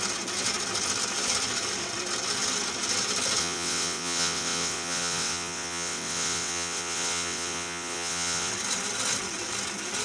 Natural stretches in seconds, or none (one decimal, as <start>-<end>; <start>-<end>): 0.0-3.4; 8.5-10.0